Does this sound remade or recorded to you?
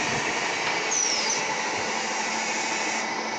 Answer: recorded